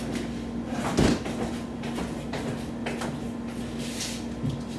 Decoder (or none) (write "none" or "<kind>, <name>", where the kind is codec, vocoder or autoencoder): none